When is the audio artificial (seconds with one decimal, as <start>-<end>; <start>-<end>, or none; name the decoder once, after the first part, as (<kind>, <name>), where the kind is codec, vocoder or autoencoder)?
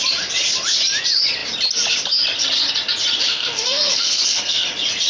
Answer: 3.3-4.6 (codec, SNAC)